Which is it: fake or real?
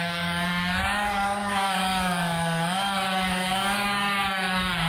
fake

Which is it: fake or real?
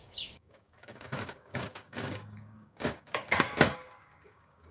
fake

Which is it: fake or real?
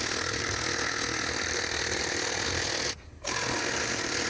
real